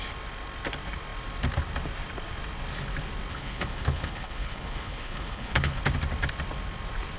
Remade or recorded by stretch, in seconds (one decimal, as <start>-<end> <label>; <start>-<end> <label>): 0.0-3.3 recorded; 3.3-5.8 remade; 5.8-7.2 recorded